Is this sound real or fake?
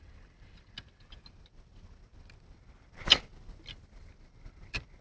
real